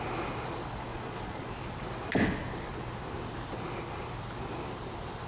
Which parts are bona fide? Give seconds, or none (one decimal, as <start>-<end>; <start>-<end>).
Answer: 0.0-0.9; 1.5-5.3